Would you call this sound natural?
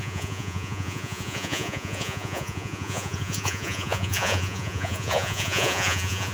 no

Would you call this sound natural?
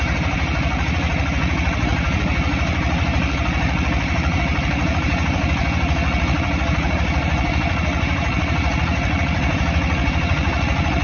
no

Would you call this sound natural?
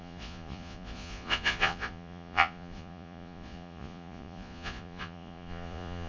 no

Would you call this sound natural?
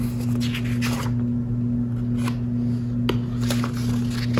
yes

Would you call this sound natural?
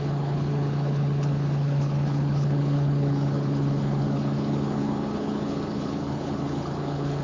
no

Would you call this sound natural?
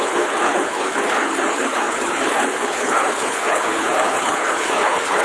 no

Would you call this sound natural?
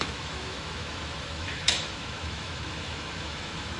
no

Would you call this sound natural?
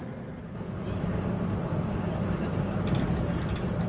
yes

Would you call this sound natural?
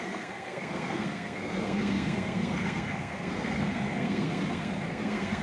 no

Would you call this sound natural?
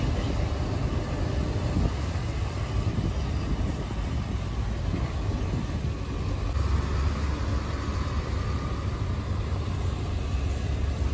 yes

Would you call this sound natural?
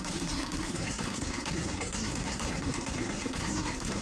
no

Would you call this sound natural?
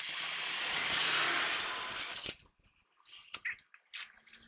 yes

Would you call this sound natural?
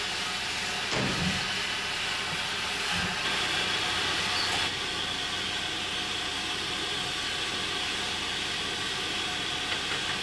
yes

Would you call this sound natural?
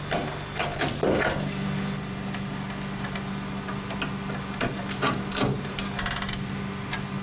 yes